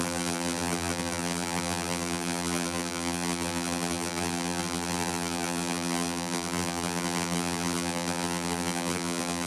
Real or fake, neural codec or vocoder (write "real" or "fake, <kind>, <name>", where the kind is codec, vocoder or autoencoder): fake, vocoder, BigVGAN v2